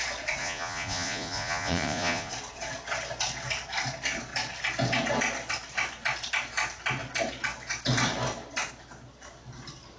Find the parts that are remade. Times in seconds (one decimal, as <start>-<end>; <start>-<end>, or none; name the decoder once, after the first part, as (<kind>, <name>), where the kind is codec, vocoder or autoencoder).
0.4-2.3 (vocoder, Vocos)